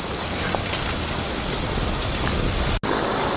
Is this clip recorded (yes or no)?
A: yes